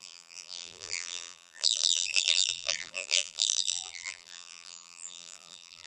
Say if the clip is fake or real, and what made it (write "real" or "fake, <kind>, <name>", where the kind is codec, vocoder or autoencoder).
fake, vocoder, BigVGAN v2